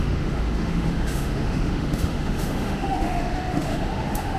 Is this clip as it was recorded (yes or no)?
no